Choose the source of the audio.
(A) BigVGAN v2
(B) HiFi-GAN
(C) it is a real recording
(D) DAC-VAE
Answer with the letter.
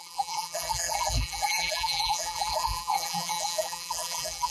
A